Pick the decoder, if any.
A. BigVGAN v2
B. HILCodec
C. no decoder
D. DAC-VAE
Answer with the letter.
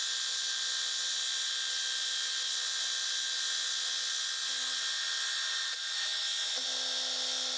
C